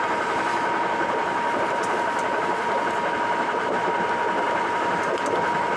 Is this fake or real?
real